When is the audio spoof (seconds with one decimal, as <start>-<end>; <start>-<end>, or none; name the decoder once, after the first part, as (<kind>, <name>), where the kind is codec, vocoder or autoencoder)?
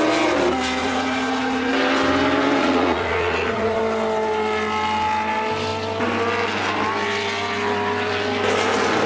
0.8-1.7 (vocoder, Vocos); 2.6-3.8